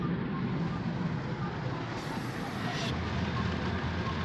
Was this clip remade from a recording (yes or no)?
no